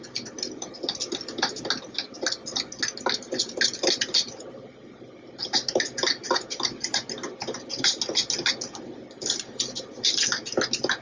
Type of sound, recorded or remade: recorded